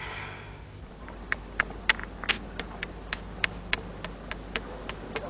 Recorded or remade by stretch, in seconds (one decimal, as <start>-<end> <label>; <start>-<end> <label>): 0.0-5.3 recorded